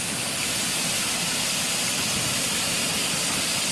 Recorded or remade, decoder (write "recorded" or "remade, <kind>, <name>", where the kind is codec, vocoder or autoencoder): recorded